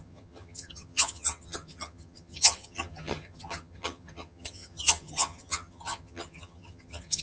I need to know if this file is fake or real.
fake